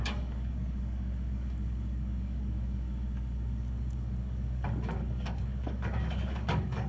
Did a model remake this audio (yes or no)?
yes